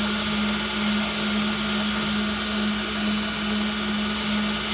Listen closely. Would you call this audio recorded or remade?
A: recorded